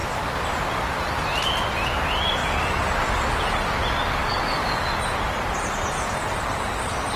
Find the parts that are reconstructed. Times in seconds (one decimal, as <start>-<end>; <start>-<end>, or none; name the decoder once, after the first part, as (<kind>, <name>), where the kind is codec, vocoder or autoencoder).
4.2-4.9 (codec, DAC)

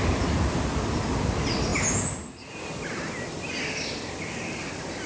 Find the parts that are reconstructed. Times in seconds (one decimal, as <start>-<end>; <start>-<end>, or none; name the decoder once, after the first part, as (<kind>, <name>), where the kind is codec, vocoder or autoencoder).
none

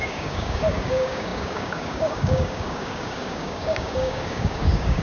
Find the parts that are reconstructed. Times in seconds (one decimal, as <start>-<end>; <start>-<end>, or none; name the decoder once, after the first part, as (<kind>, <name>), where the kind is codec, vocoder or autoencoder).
0.0-5.0 (codec, DAC)

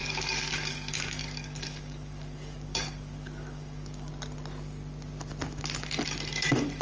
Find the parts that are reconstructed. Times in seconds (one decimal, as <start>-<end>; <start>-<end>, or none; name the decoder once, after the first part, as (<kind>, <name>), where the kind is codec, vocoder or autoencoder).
0.0-4.1 (codec, DAC)

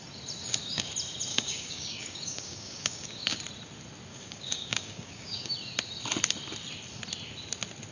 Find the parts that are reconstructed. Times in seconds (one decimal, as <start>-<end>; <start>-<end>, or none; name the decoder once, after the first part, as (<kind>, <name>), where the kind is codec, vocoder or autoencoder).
0.4-0.9 (codec, DAC); 1.3-3.4; 4.1-5.5

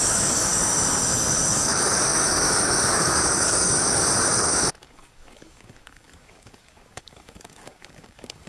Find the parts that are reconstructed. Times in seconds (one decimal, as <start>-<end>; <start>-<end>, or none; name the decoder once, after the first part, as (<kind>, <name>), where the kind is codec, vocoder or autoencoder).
0.0-0.5 (codec, DAC); 1.5-8.5

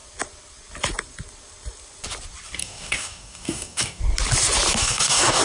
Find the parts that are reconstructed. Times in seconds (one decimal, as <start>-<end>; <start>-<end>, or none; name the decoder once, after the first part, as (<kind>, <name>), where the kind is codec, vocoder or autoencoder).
2.6-4.0 (codec, DAC); 4.8-5.4

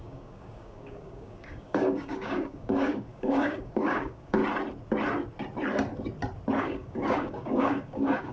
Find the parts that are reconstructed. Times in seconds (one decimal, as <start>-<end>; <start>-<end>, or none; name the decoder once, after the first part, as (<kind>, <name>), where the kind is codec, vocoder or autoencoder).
0.0-4.4 (codec, DAC); 6.6-8.3